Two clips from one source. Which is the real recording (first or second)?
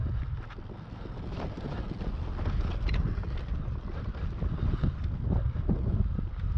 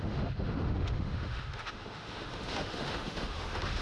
first